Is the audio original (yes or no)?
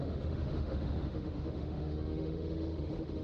no